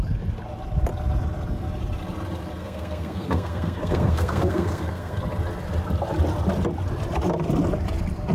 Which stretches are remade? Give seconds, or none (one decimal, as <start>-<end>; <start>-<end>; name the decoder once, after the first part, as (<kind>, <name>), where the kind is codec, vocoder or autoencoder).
2.6-5.2 (codec, SNAC)